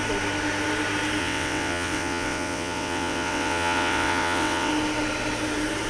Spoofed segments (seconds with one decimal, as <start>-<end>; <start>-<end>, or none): 1.2-4.7